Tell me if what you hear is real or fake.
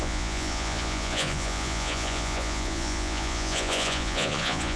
fake